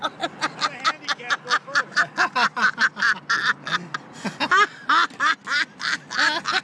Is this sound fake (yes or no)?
no